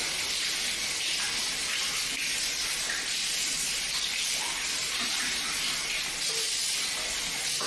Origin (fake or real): real